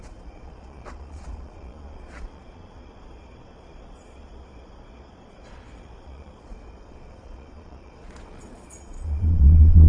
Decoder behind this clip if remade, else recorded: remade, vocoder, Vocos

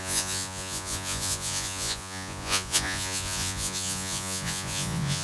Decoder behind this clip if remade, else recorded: remade, vocoder, Vocos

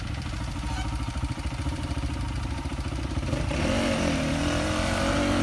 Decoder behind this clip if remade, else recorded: remade, vocoder, BigVGAN v2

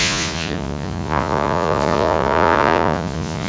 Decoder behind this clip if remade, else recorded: remade, vocoder, Vocos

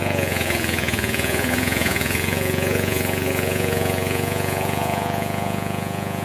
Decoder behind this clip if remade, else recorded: remade, vocoder, Vocos